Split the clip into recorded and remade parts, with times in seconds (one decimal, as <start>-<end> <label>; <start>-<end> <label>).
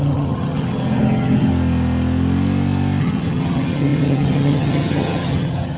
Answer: 0.0-1.5 remade; 1.5-3.0 recorded; 3.0-5.8 remade